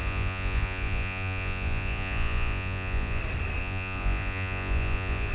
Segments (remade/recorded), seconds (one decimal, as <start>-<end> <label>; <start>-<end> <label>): 0.0-3.2 remade; 3.2-3.6 recorded; 3.6-5.3 remade